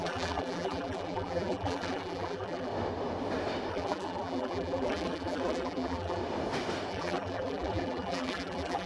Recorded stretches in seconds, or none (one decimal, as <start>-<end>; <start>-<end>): 2.7-3.7; 6.2-6.9